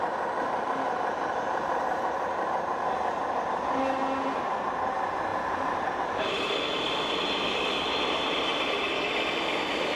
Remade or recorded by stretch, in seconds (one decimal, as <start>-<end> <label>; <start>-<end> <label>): 0.0-5.3 recorded; 5.3-6.5 remade; 6.5-10.0 recorded